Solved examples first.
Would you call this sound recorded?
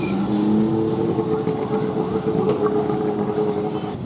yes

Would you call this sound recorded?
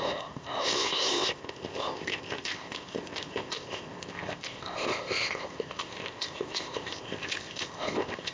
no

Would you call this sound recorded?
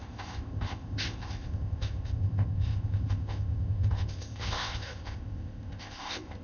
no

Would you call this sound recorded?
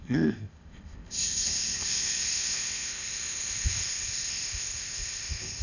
no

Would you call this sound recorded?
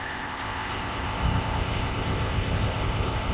no